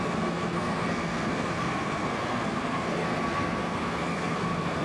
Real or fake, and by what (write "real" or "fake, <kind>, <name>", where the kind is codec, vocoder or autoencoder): fake, codec, SNAC